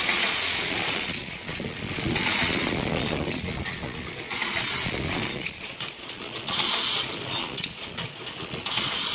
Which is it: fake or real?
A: fake